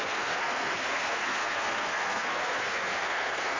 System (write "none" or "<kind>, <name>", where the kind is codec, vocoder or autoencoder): codec, SNAC